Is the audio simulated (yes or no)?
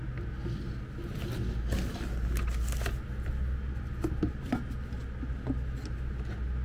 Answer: no